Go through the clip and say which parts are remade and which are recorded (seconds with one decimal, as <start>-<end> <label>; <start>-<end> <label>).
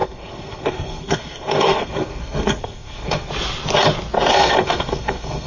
0.0-3.3 remade; 3.3-4.3 recorded; 4.3-5.5 remade